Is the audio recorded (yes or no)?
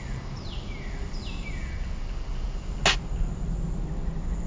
yes